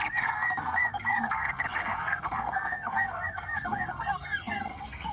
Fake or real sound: fake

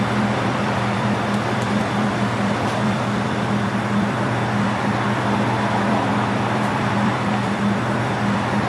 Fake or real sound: fake